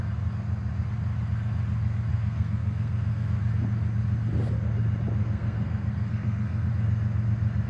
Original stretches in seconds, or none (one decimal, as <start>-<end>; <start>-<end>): 0.0-2.1; 3.4-5.2; 6.7-7.7